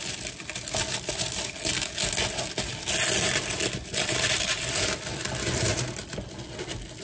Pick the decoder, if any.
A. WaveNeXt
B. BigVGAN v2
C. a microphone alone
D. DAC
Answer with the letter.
C